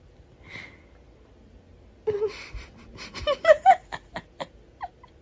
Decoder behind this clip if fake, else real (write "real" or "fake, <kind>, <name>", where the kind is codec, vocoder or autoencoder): real